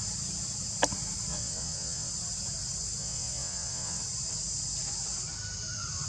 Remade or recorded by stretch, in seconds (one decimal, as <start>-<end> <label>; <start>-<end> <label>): 0.0-1.3 recorded; 1.3-2.1 remade; 2.1-3.0 recorded; 3.0-4.0 remade; 4.0-6.1 recorded